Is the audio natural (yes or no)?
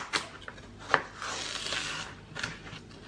yes